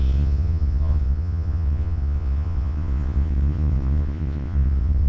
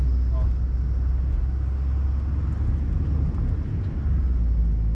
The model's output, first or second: first